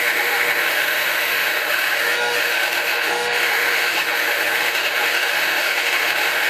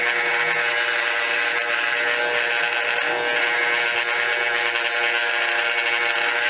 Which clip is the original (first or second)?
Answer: second